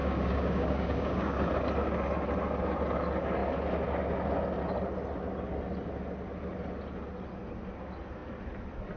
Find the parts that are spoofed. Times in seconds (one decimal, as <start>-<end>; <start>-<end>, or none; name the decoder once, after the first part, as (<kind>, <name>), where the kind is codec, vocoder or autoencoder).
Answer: 0.0-1.5 (codec, DAC)